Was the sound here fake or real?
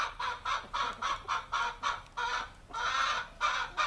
real